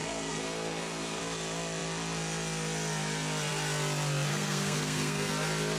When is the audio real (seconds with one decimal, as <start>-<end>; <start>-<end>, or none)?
1.2-4.3; 5.3-5.8